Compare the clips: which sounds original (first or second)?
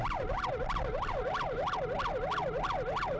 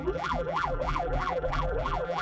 first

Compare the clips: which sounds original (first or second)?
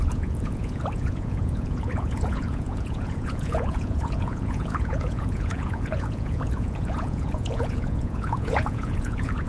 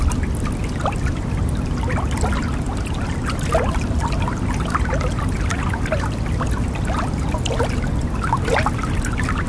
second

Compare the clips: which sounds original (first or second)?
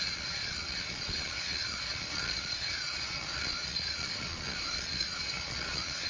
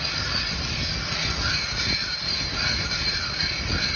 second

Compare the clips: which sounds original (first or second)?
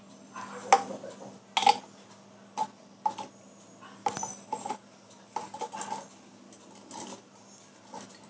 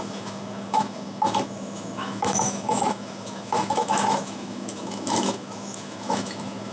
first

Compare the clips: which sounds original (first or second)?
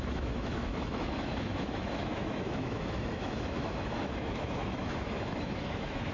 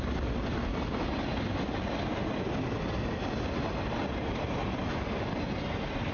second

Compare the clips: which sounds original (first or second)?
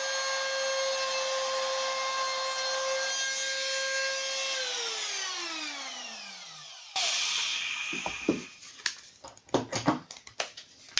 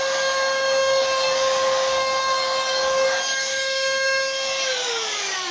first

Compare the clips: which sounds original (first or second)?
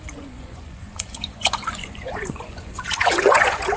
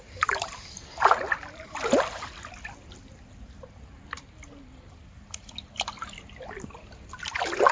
second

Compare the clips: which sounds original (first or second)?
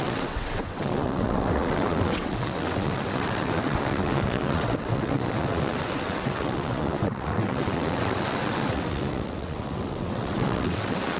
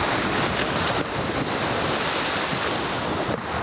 second